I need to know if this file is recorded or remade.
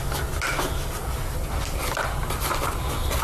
recorded